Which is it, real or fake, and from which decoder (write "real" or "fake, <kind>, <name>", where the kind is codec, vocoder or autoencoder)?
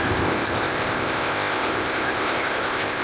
fake, codec, ZipCodec